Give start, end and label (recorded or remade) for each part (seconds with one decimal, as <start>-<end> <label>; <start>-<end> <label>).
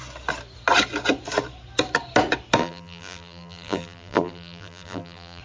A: 0.0-2.6 recorded; 2.6-5.4 remade